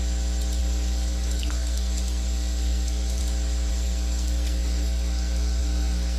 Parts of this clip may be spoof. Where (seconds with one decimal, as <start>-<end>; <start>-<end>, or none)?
0.6-3.2; 3.7-6.2